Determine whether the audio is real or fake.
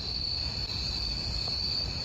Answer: fake